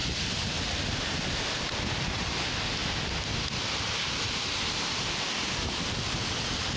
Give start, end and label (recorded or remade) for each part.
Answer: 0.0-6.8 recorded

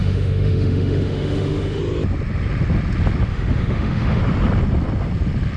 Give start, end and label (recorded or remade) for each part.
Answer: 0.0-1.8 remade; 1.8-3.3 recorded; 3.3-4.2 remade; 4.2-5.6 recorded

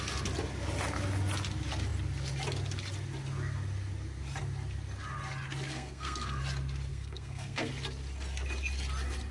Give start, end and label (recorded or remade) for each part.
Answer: 0.0-5.7 recorded; 5.7-6.4 remade; 6.4-6.9 recorded; 6.9-7.7 remade; 7.7-9.3 recorded

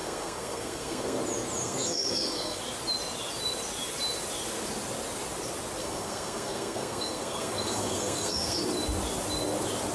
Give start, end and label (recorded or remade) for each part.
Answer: 0.0-1.2 remade; 1.2-1.6 recorded; 1.6-2.6 remade; 2.6-5.8 recorded; 5.8-8.6 remade; 8.6-9.9 recorded